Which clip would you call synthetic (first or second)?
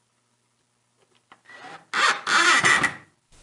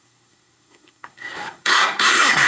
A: second